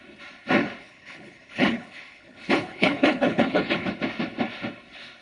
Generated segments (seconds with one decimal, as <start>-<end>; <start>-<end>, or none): 0.8-3.9